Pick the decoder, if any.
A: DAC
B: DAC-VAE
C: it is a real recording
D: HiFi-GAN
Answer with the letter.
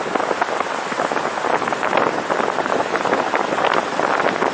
C